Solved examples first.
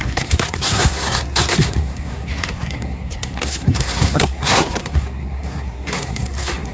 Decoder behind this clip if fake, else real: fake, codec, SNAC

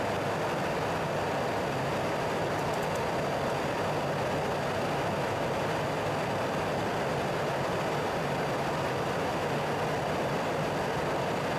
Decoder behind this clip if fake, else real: real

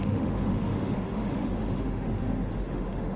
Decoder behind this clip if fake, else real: fake, autoencoder, DAC-VAE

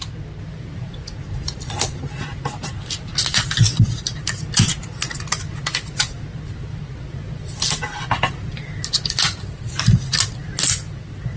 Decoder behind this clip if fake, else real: real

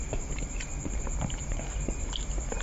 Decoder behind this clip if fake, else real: fake, vocoder, BigVGAN v2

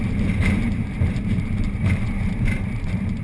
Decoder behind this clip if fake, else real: fake, vocoder, BigVGAN v2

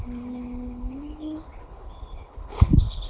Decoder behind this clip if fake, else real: fake, codec, HILCodec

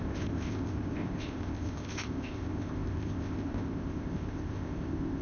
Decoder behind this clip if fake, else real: fake, codec, ZipCodec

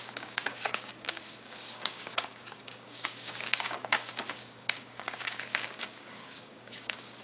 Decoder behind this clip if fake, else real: fake, codec, DAC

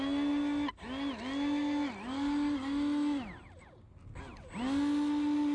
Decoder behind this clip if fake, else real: real